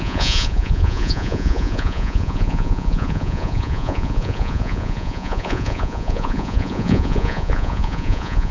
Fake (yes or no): yes